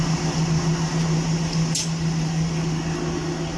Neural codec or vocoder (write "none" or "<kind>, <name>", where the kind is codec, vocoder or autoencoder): none